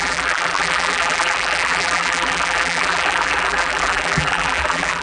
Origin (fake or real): fake